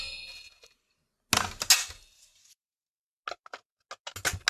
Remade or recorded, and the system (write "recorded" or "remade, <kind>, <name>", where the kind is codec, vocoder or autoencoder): recorded